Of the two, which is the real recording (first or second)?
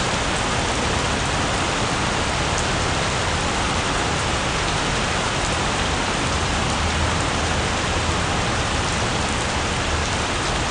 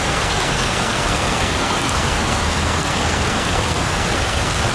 first